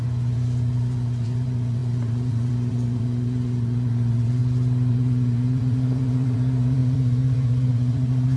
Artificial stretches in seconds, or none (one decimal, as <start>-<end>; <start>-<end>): 0.0-4.4; 4.9-8.4

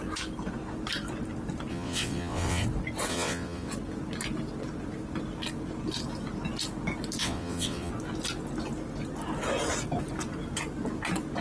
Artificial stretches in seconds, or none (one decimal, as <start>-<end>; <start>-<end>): 1.7-2.6; 3.1-3.7; 7.2-7.9

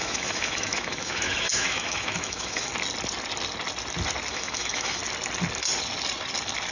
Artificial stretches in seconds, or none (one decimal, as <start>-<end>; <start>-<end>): 0.0-2.7; 4.3-5.0